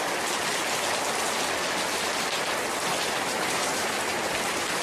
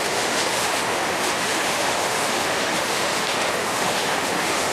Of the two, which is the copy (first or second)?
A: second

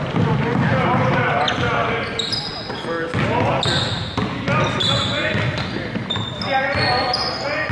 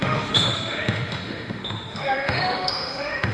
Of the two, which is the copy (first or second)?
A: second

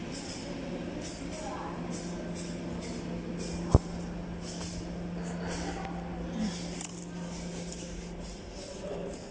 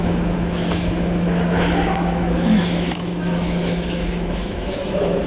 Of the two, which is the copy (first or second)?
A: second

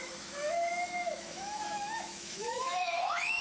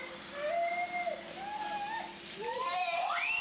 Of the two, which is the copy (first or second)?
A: first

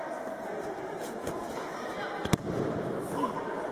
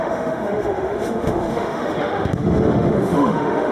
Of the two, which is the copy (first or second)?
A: second